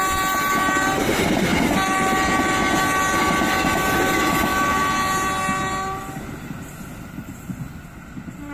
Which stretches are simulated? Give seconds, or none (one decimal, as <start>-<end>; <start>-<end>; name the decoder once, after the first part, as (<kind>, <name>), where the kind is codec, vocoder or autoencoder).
none